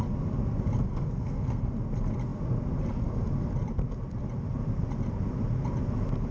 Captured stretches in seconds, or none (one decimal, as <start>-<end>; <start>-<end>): 0.0-0.9; 1.7-6.3